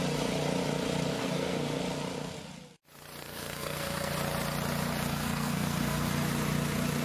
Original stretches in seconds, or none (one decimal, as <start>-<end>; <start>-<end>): 0.0-1.1; 1.8-3.2; 4.1-5.1; 6.1-7.0